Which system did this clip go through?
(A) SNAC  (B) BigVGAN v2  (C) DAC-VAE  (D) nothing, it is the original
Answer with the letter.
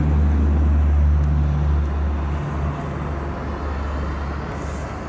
D